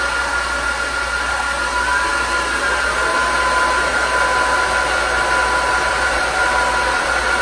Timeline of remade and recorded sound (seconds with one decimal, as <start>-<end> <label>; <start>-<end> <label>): 0.0-7.4 recorded